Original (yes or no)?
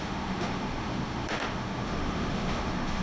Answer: no